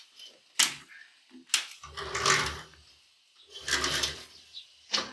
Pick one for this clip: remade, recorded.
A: recorded